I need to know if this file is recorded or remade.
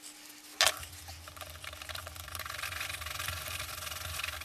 recorded